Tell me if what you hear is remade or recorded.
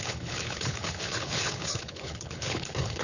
remade